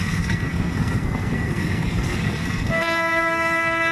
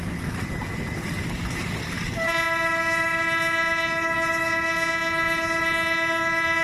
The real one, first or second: second